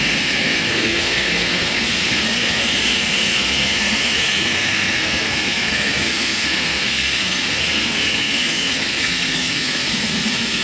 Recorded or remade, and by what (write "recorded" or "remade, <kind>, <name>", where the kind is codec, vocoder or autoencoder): remade, codec, SNAC